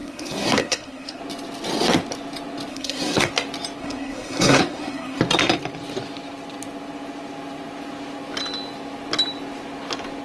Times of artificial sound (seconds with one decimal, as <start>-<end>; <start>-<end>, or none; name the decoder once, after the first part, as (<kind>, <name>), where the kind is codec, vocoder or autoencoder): 0.0-1.2 (codec, SNAC); 2.7-3.3; 3.8-5.2